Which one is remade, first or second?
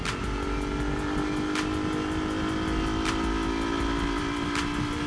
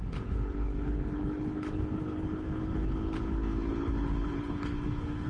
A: second